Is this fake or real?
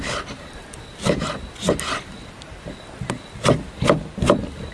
real